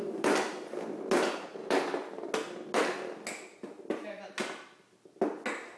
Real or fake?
real